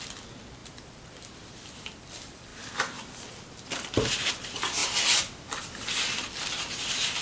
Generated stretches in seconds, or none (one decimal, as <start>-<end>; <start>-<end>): none